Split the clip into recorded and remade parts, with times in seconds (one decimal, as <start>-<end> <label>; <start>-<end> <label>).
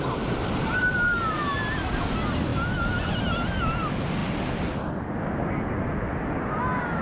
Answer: 0.0-7.0 recorded